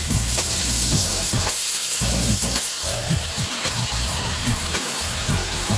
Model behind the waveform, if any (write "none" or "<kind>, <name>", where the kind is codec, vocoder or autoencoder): codec, SNAC